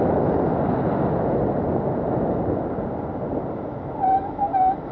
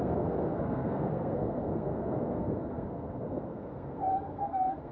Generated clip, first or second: second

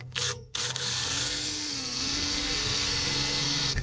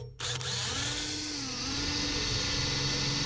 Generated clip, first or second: first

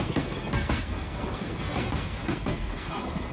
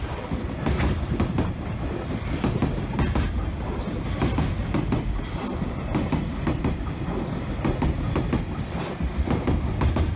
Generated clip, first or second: first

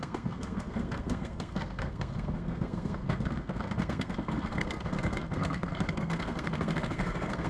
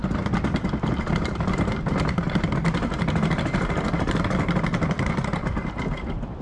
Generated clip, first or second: first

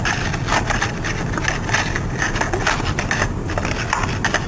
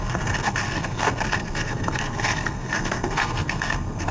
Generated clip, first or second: second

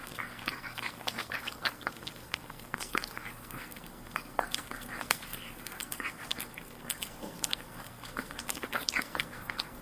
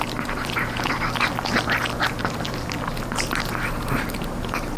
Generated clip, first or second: first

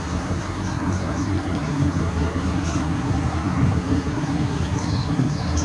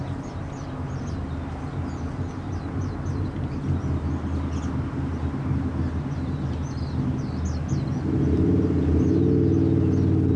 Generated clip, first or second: first